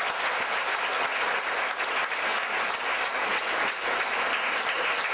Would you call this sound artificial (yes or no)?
no